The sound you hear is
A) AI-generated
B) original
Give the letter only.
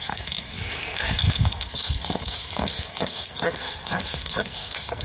A